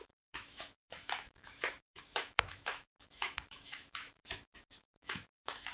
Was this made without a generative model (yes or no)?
no